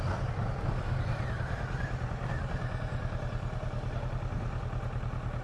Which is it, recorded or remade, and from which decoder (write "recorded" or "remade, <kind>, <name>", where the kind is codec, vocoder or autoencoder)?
recorded